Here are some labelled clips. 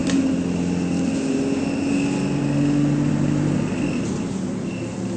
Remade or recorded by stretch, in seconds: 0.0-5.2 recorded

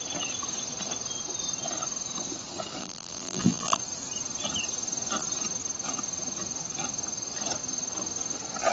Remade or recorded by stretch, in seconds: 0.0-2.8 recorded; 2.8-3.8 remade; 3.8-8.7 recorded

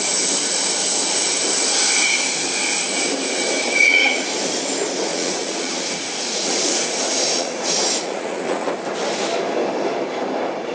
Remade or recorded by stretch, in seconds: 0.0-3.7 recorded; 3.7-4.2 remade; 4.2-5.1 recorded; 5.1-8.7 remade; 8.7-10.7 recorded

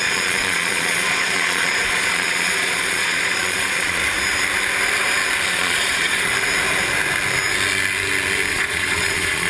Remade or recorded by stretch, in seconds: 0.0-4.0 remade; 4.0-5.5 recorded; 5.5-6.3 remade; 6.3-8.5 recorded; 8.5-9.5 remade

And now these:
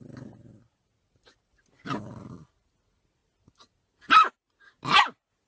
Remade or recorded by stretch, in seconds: 0.0-5.5 recorded